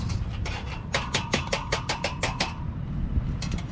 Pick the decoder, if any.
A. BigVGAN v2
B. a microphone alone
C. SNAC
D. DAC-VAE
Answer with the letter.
B